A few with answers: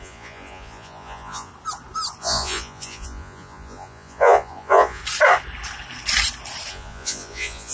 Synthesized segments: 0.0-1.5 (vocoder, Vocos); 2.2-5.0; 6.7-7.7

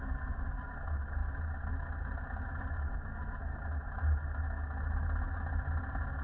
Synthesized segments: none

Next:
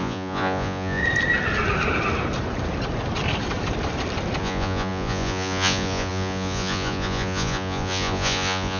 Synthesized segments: 0.0-1.0 (vocoder, Vocos); 4.4-8.8

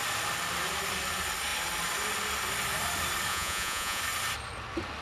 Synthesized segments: 3.3-4.0 (vocoder, Vocos)

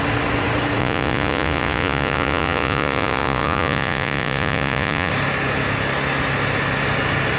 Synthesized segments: 0.8-5.1 (vocoder, Vocos)

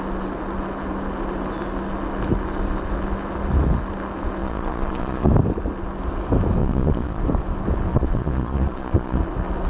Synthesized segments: 4.4-5.3 (vocoder, Vocos); 6.6-7.2; 7.9-9.2

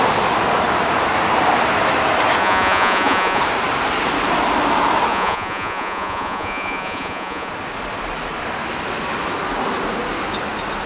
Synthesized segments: 2.4-3.4 (vocoder, Vocos); 5.1-7.5